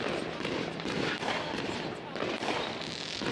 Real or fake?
real